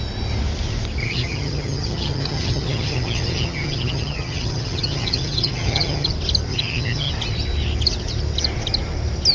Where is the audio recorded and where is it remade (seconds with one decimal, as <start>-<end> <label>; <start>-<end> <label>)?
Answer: 0.0-1.0 recorded; 1.0-6.1 remade; 6.1-6.5 recorded; 6.5-7.1 remade; 7.1-9.3 recorded